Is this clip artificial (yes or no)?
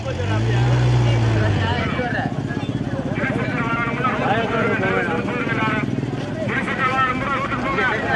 no